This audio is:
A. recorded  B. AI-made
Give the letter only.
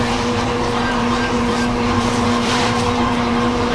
B